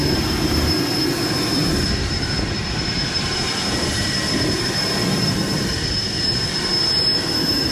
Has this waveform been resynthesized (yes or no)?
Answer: yes